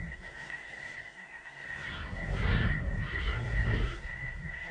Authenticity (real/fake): fake